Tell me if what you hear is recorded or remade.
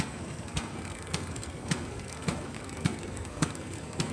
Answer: remade